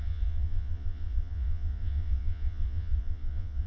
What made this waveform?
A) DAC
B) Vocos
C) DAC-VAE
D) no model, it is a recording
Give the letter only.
B